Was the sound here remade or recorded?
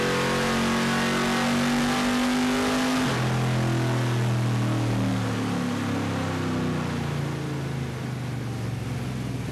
recorded